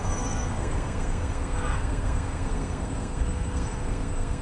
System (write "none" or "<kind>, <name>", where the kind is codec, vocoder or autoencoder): codec, SNAC